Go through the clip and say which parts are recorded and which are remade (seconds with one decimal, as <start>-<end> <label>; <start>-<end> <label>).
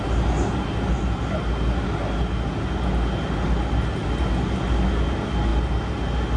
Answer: 0.0-6.4 recorded